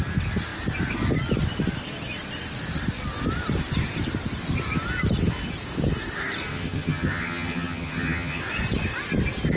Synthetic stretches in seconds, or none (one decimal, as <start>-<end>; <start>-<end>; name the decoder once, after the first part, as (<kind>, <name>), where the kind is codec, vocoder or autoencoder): 6.5-8.4 (vocoder, HiFi-GAN)